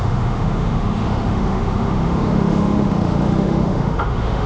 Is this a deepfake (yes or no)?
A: yes